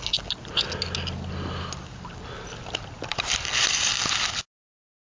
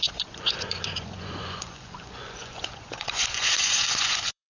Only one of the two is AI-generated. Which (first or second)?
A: second